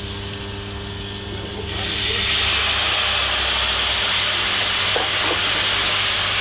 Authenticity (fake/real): real